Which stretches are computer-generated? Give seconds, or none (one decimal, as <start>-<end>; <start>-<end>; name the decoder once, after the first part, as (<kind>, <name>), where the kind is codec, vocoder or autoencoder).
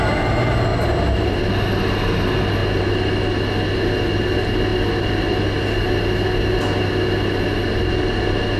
0.7-1.4 (vocoder, BigVGAN v2); 2.6-3.1